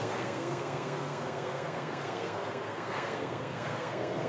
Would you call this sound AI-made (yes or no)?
yes